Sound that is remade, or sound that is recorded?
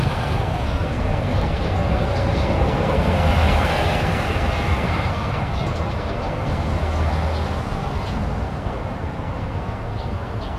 remade